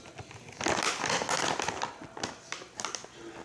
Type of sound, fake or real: real